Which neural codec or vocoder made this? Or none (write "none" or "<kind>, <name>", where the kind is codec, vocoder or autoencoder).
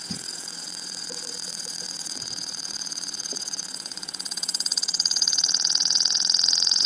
vocoder, WaveNeXt